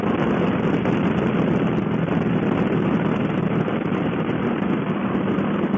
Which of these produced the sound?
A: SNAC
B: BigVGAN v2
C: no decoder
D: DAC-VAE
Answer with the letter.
B